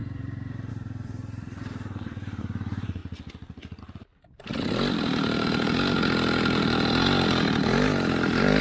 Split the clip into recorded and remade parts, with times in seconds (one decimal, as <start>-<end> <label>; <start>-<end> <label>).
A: 0.0-3.0 remade; 3.0-3.8 recorded; 3.8-8.6 remade

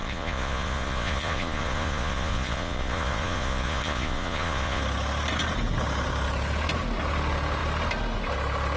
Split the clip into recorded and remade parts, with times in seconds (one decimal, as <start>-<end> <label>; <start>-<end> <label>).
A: 0.0-4.8 remade; 4.8-8.8 recorded

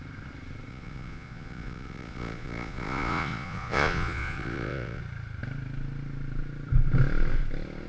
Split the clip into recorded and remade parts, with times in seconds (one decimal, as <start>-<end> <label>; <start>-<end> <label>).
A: 0.0-0.7 recorded; 0.7-5.0 remade; 5.0-7.9 recorded

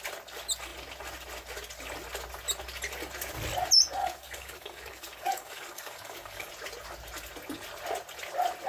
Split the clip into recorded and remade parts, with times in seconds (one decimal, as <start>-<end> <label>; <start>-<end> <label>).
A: 0.0-4.0 recorded; 4.0-6.5 remade; 6.5-8.7 recorded